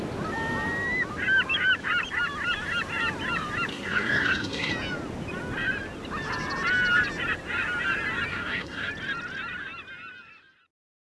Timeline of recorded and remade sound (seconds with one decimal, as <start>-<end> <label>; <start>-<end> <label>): 0.0-3.7 recorded; 3.7-4.7 remade; 4.7-8.3 recorded; 8.3-8.9 remade; 8.9-11.0 recorded